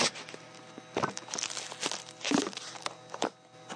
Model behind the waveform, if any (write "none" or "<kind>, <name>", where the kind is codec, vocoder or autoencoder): none